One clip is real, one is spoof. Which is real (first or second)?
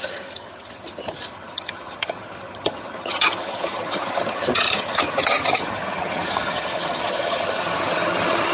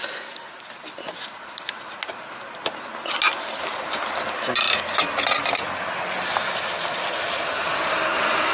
second